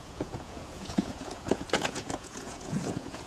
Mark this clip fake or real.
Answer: fake